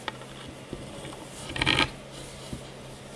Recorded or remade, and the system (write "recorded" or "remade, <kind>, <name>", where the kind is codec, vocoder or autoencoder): recorded